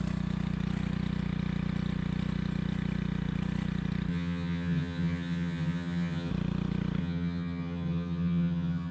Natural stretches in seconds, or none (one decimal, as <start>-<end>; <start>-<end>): 0.0-4.1; 6.3-7.0